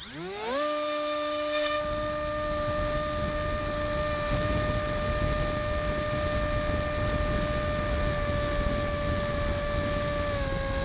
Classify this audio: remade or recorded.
recorded